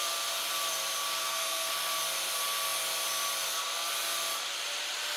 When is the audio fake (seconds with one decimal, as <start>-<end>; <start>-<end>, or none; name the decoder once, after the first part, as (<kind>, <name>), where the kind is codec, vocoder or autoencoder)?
1.2-1.7 (codec, SNAC)